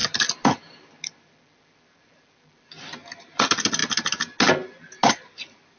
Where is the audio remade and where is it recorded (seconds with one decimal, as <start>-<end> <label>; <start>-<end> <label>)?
0.0-5.8 recorded